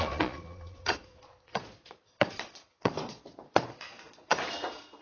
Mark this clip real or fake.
fake